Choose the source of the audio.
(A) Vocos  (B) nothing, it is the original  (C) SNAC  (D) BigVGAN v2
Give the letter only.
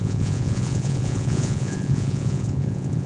A